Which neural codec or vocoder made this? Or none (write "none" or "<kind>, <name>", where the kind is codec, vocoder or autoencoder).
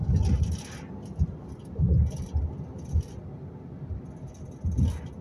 none